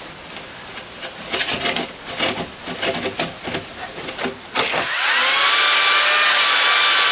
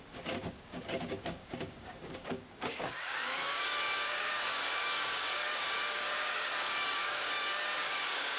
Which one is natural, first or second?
first